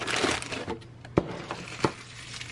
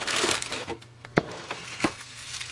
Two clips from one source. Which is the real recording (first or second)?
first